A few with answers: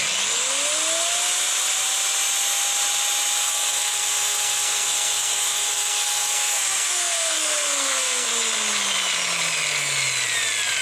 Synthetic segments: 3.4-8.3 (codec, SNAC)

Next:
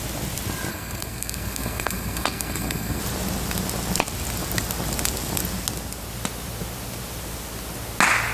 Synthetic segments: 0.7-3.0 (codec, SNAC)

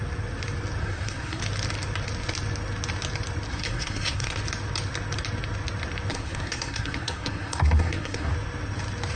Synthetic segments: 0.8-1.4 (codec, SNAC); 3.5-4.4; 6.1-8.3

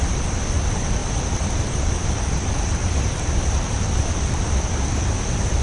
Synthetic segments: none